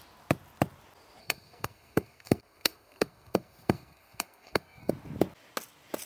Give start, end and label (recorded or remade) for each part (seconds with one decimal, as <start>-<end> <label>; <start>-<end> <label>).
0.0-1.2 recorded; 1.2-4.9 remade; 4.9-6.1 recorded